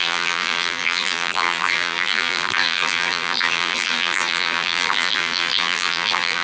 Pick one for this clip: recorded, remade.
remade